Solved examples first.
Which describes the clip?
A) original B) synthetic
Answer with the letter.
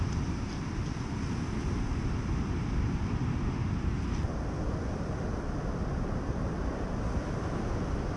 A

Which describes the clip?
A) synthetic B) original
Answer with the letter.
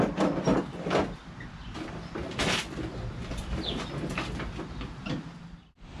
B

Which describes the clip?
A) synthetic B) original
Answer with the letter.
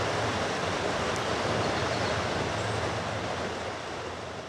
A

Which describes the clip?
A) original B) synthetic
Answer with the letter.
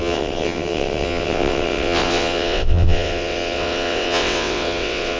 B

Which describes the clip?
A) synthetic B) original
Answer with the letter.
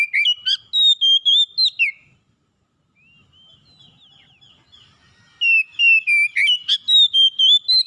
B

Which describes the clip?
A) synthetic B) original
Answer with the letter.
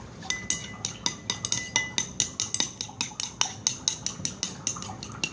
B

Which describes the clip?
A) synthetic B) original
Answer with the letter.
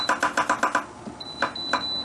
B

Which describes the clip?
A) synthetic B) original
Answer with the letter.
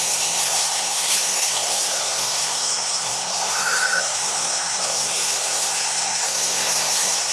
A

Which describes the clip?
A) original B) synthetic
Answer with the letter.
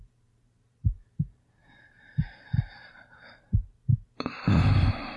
B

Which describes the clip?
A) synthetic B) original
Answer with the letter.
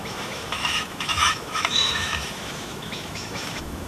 A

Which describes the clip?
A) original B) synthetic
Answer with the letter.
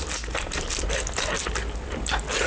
A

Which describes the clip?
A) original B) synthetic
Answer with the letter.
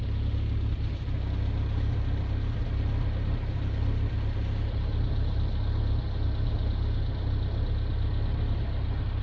A